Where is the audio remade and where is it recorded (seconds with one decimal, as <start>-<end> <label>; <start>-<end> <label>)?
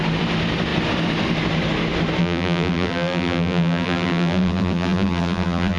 0.0-2.2 recorded; 2.2-5.8 remade